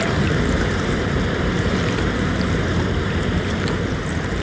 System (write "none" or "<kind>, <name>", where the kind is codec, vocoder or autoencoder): vocoder, BigVGAN v2